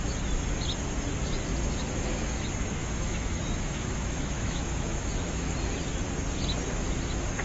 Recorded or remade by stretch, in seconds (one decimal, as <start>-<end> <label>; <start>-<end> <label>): 0.0-2.8 recorded; 2.8-5.5 remade; 5.5-7.4 recorded